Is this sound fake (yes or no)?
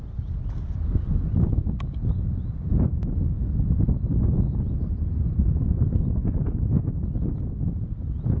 no